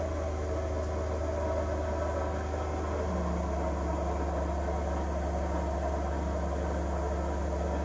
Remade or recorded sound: recorded